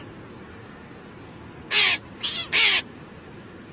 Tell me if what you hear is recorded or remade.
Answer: recorded